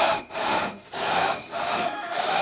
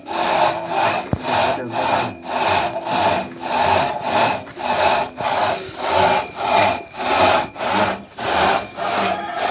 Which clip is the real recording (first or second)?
second